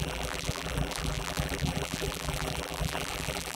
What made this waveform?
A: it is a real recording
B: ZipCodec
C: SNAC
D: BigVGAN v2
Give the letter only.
D